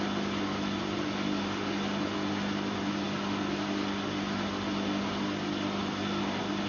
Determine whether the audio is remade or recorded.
recorded